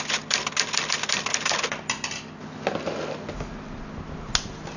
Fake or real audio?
real